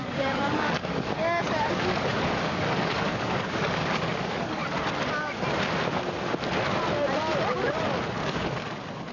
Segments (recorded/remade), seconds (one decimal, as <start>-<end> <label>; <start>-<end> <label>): 0.0-4.6 remade; 4.6-8.2 recorded; 8.2-9.1 remade